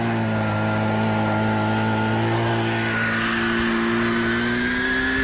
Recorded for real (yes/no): yes